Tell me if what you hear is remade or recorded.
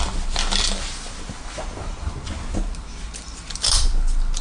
recorded